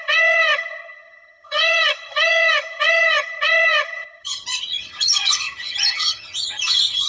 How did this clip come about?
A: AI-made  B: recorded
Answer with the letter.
A